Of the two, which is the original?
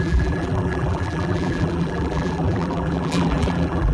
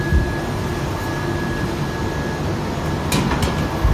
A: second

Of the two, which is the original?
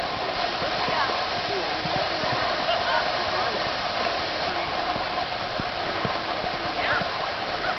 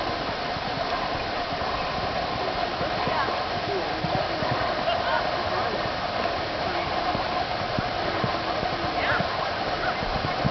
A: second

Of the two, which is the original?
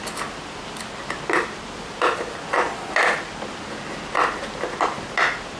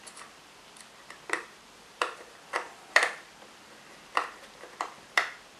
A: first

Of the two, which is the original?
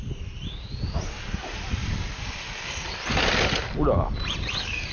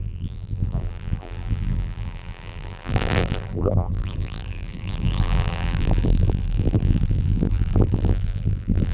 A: first